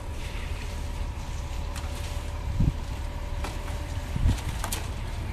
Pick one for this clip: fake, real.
fake